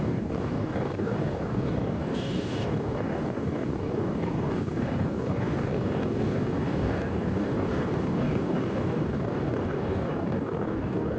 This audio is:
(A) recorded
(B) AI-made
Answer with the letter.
B